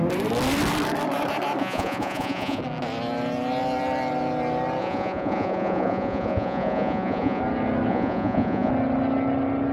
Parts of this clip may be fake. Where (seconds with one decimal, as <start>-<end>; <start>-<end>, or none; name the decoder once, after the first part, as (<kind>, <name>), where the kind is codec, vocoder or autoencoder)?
1.6-2.6 (vocoder, Vocos); 4.8-7.4; 7.9-8.7